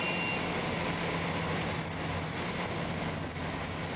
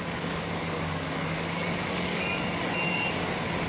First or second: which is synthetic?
second